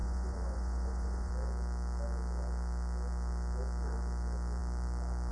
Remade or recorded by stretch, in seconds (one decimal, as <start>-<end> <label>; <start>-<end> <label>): 0.0-1.3 remade; 1.3-5.3 recorded